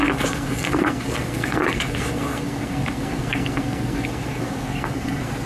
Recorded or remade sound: remade